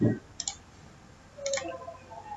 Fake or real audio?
real